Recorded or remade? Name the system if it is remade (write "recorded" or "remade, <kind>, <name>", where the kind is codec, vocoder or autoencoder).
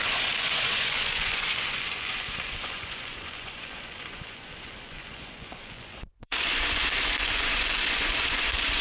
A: remade, vocoder, Vocos